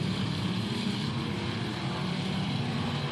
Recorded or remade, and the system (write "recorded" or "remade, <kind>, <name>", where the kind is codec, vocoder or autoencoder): remade, vocoder, BigVGAN v2